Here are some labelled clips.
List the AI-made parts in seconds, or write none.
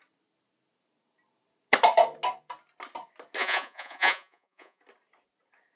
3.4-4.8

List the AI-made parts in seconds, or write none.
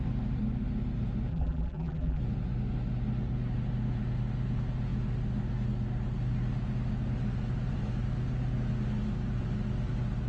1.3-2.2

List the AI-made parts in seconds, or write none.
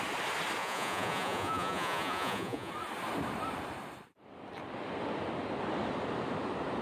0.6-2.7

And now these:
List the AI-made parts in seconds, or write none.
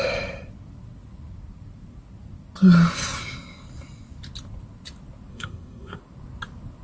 5.3-6.0